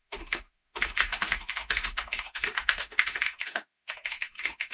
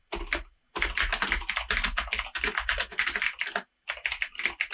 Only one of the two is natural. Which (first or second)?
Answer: second